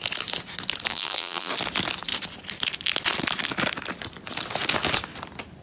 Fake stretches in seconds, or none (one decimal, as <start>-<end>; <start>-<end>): 0.9-1.5